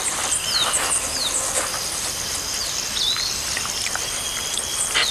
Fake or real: real